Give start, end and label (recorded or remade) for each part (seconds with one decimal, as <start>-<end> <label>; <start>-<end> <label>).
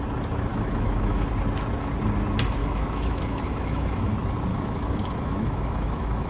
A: 0.0-0.5 recorded; 0.5-1.3 remade; 1.3-2.6 recorded; 2.6-4.1 remade; 4.1-4.5 recorded; 4.5-6.3 remade